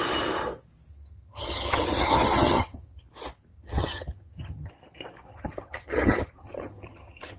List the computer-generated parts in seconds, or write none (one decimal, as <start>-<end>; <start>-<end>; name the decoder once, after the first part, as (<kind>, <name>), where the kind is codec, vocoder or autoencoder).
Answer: 0.9-3.0 (vocoder, HiFi-GAN); 3.5-4.7; 5.3-7.4